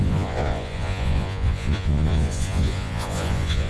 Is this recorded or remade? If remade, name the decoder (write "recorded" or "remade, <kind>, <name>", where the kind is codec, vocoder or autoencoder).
remade, vocoder, Vocos